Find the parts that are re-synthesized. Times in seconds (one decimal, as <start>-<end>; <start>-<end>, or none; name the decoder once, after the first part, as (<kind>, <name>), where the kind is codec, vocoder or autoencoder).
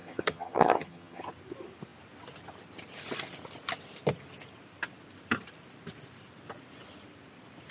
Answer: 0.0-1.2 (vocoder, HiFi-GAN)